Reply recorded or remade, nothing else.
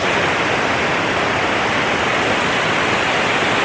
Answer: recorded